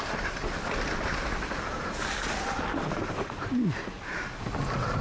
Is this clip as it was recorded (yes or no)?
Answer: yes